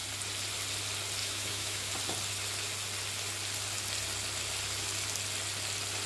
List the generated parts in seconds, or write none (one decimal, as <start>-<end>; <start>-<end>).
1.2-1.9